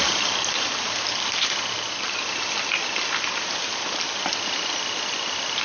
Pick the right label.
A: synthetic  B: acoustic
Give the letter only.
B